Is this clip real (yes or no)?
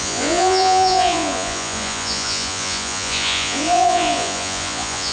no